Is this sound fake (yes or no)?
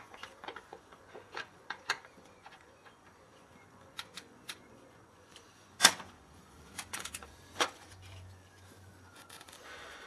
yes